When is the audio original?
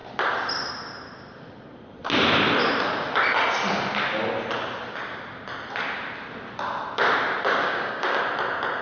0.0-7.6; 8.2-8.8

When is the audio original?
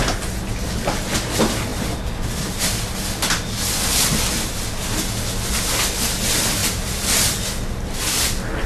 0.0-6.6; 7.4-8.7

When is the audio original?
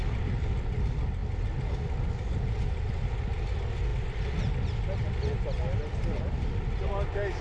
0.0-7.4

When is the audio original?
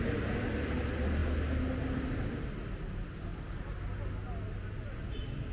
0.0-5.5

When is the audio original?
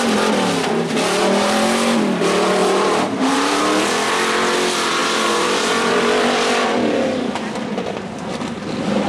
0.0-2.6; 3.6-5.0; 5.7-9.1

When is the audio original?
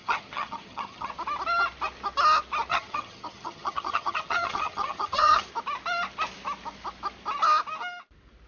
1.1-2.7; 5.5-8.5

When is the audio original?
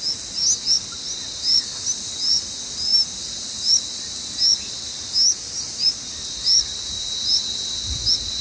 0.0-8.4